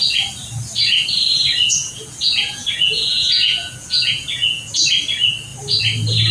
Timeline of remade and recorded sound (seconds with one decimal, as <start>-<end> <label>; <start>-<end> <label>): 0.0-1.8 recorded; 1.8-4.7 remade; 4.7-6.3 recorded